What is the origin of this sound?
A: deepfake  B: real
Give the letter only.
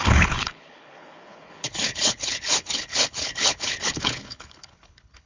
A